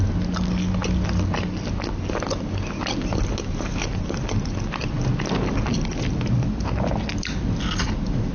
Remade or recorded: recorded